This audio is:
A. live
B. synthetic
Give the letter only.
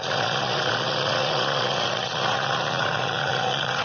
B